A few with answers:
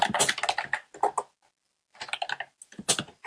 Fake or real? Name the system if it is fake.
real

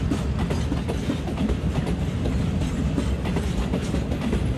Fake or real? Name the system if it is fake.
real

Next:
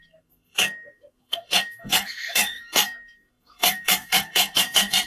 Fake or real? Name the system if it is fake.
fake, codec, SNAC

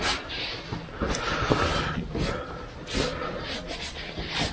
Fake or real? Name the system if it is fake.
real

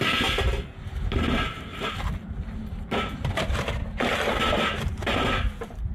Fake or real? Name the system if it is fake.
real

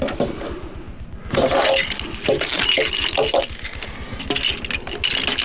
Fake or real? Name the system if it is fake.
real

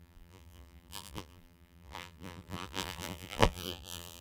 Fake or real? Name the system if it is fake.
fake, vocoder, BigVGAN v2